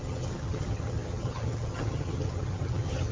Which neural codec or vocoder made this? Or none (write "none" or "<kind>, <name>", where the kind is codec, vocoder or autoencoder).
vocoder, HiFi-GAN